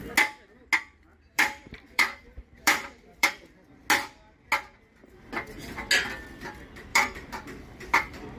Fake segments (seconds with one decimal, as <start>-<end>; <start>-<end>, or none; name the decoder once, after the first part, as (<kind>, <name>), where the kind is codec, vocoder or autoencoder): 1.1-3.5 (vocoder, BigVGAN v2); 6.9-8.4